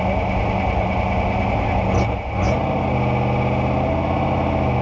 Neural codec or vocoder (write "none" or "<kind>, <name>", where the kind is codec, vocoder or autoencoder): none